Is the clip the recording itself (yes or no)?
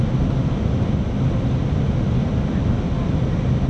yes